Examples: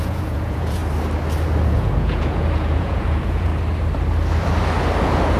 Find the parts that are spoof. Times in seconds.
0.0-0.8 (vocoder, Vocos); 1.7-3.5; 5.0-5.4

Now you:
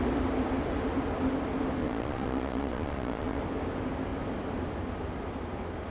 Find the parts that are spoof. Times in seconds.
1.8-3.4 (vocoder, Vocos)

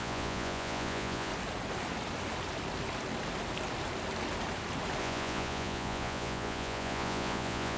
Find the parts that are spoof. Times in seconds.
0.0-1.3 (vocoder, Vocos); 5.0-7.8

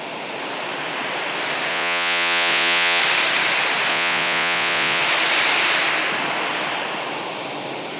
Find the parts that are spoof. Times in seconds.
1.7-3.0 (vocoder, Vocos); 3.9-5.0

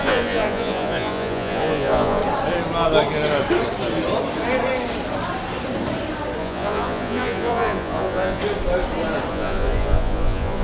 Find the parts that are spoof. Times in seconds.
0.0-2.2 (vocoder, Vocos); 6.4-8.4; 9.3-10.6

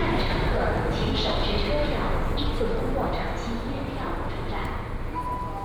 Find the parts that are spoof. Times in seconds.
none

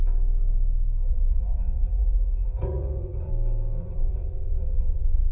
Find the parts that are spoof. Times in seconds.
1.1-3.3 (vocoder, Vocos); 3.8-5.3

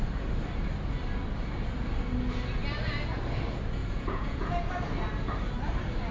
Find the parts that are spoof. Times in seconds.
3.8-4.7 (vocoder, Vocos)